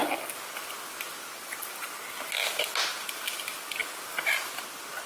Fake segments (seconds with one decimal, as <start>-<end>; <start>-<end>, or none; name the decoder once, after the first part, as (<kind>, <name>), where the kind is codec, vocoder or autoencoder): 3.8-4.3 (vocoder, BigVGAN v2)

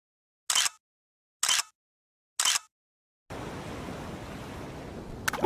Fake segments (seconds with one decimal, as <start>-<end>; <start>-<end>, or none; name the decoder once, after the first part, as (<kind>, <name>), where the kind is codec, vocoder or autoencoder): none

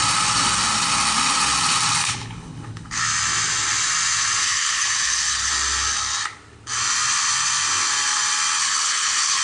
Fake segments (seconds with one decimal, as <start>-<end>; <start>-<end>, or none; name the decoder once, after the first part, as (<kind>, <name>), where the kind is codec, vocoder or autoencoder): 2.0-3.0 (codec, HILCodec); 4.4-5.5; 8.6-9.4

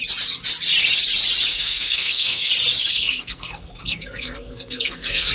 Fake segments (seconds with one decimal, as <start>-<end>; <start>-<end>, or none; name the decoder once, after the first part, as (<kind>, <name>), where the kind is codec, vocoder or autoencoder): 1.5-2.5 (codec, SNAC); 2.9-5.3